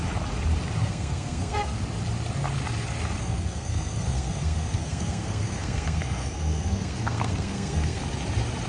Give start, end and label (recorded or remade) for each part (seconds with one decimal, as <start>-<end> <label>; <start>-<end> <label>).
0.0-0.8 recorded; 0.8-1.8 remade; 1.8-3.2 recorded; 3.2-8.0 remade; 8.0-8.7 recorded